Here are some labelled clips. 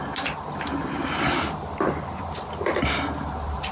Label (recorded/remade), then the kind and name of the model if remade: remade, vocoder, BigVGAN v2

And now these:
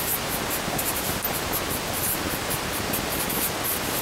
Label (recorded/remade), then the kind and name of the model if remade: recorded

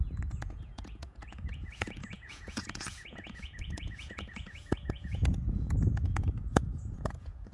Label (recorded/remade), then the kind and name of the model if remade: remade, vocoder, Vocos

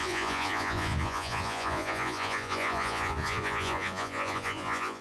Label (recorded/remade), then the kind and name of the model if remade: remade, vocoder, Vocos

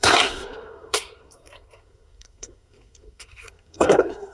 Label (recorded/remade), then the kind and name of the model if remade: remade, codec, SNAC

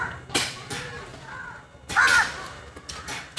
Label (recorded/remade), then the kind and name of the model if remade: recorded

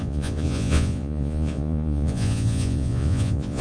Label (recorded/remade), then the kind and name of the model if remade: remade, vocoder, Vocos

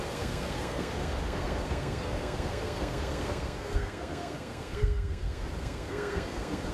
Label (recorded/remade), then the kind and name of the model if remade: remade, codec, SNAC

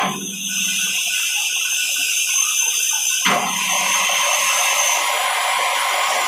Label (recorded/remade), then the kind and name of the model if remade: recorded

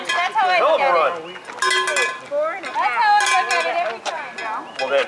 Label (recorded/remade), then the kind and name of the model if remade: recorded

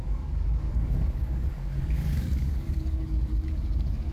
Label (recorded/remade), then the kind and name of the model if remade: remade, codec, DAC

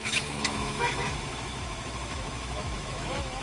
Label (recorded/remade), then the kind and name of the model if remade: remade, autoencoder, DAC-VAE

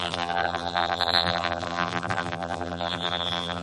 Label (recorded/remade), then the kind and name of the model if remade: remade, vocoder, BigVGAN v2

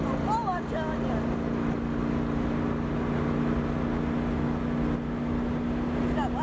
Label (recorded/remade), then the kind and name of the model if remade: recorded